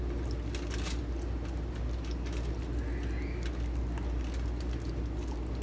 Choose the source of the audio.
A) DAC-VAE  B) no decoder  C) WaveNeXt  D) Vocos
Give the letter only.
B